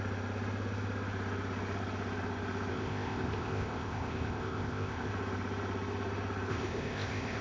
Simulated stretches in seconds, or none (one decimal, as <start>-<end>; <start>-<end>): 2.7-5.1; 6.5-7.4